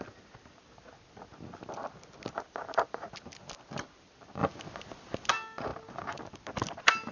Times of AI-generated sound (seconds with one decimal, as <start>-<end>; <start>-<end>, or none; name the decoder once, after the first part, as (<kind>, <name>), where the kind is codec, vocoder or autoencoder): none